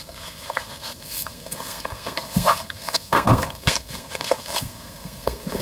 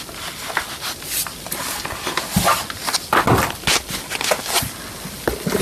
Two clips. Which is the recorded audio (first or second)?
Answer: second